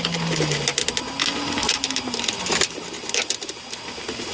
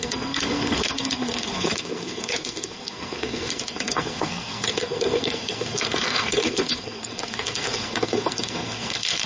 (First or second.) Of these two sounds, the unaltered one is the first